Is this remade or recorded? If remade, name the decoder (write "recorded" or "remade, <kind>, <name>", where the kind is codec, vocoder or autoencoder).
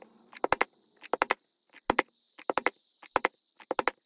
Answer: recorded